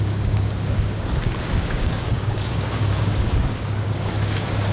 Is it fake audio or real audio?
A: fake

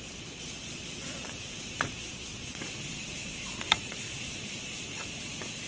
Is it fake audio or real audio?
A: fake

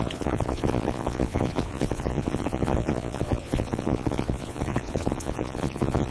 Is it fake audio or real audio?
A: fake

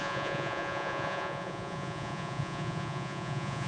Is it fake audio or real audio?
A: fake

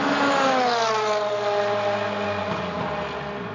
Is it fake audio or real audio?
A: real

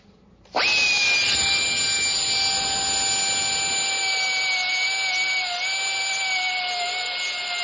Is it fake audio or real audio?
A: real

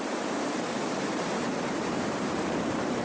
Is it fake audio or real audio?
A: fake